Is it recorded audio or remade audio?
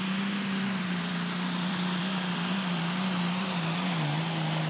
remade